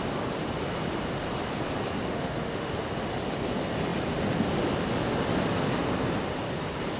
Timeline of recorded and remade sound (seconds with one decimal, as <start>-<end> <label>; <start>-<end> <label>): 0.0-2.1 recorded; 2.1-2.7 remade; 2.7-7.0 recorded